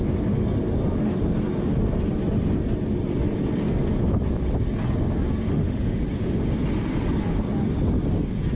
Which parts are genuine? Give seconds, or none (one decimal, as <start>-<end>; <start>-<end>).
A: 0.0-5.5; 6.0-8.6